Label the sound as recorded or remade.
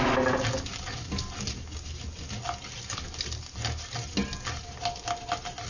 recorded